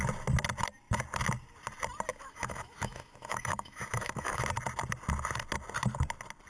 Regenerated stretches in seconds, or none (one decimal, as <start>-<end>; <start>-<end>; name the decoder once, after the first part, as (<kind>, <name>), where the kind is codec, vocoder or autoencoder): 2.1-4.4 (autoencoder, DAC-VAE)

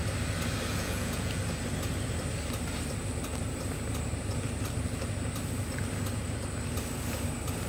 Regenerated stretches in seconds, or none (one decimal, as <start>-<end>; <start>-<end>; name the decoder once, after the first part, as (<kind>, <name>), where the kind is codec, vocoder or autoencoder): 0.7-1.4 (vocoder, Vocos)

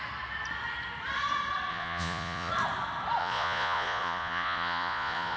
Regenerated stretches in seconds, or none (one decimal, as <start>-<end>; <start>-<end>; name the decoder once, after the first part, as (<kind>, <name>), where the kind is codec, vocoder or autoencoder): 1.7-2.5 (vocoder, Vocos); 3.2-5.4

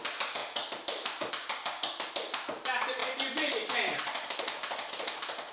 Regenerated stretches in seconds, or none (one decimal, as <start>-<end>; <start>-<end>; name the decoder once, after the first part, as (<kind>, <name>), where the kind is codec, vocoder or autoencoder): 0.4-1.3 (vocoder, BigVGAN v2); 3.0-5.0

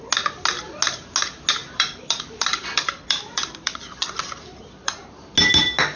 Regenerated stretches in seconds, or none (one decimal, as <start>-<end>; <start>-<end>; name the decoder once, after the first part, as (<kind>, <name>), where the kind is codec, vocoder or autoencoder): 1.6-5.2 (vocoder, BigVGAN v2)